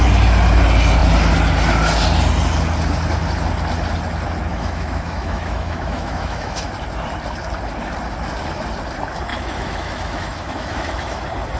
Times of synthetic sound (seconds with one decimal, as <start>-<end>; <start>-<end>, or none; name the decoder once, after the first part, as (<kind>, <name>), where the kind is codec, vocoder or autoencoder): 4.5-6.7 (autoencoder, DAC-VAE); 9.3-11.2